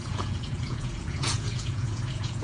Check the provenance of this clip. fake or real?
fake